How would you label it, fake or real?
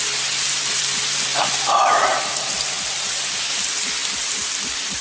real